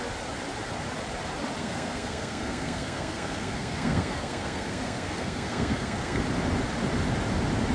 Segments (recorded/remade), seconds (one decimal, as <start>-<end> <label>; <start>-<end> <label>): 0.0-1.6 recorded; 1.6-6.2 remade; 6.2-7.7 recorded